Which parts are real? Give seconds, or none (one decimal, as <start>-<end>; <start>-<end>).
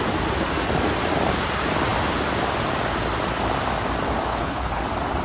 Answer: 0.0-4.3; 4.8-5.2